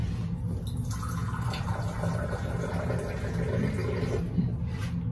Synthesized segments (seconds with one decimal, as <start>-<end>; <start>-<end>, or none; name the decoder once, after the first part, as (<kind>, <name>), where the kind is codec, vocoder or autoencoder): none